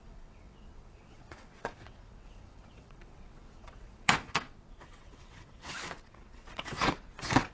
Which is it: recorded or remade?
remade